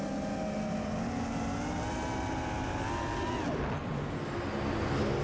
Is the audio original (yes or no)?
yes